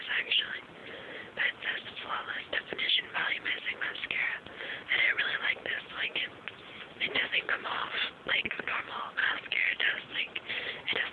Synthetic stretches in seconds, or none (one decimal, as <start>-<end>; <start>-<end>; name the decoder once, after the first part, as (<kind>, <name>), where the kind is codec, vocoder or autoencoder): 9.2-10.5 (vocoder, Vocos)